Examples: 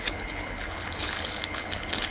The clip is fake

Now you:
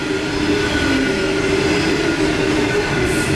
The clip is real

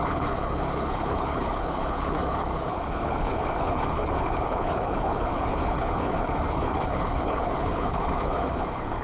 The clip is fake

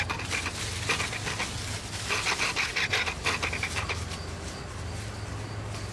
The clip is real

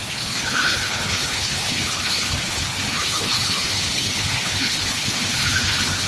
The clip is fake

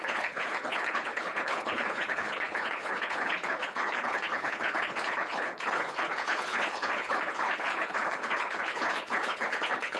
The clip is fake